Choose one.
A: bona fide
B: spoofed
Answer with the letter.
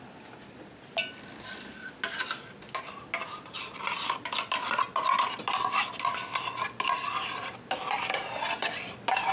A